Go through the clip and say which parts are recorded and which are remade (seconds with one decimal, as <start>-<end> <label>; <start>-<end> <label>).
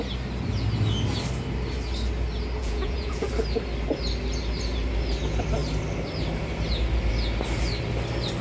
0.0-2.6 recorded; 2.6-3.3 remade; 3.3-8.4 recorded